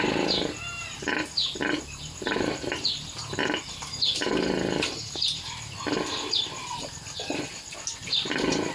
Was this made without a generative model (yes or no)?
yes